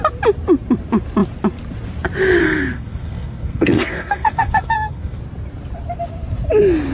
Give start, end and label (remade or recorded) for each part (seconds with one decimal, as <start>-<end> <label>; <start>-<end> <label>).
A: 0.0-2.4 recorded; 2.4-5.2 remade; 5.2-6.9 recorded